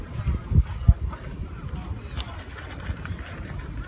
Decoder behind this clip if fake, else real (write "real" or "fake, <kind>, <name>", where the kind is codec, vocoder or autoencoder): real